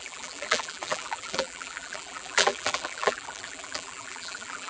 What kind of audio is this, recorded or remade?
remade